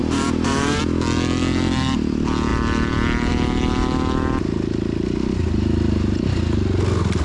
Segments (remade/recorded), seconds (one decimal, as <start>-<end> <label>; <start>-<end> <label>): 0.0-0.8 remade; 0.8-7.2 recorded